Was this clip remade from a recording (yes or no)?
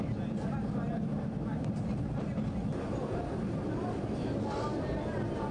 no